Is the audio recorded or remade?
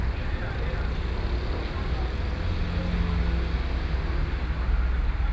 recorded